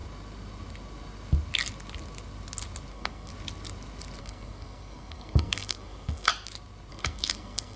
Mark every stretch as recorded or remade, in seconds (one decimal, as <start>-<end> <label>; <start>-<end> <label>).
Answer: 0.0-2.9 recorded; 2.9-3.3 remade; 3.3-4.2 recorded; 4.2-6.3 remade; 6.3-6.9 recorded; 6.9-7.8 remade